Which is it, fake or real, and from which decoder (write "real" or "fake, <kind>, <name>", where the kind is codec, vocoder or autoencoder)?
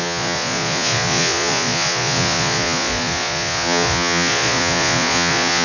fake, vocoder, Vocos